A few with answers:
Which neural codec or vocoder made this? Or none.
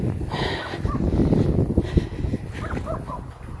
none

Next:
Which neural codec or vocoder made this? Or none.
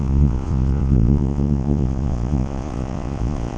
vocoder, Vocos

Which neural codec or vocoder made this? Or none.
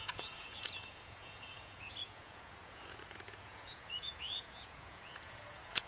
vocoder, Vocos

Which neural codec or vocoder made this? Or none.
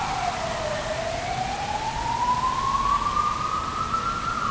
none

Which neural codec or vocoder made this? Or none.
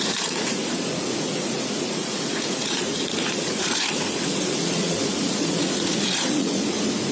vocoder, Vocos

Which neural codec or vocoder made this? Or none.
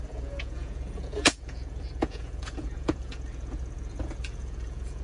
vocoder, Vocos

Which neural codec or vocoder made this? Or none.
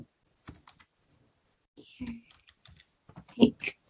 none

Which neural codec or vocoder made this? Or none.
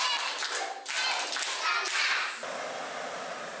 none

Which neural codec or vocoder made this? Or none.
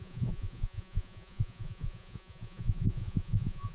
vocoder, Vocos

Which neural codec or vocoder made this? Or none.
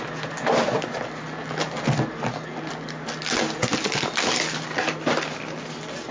none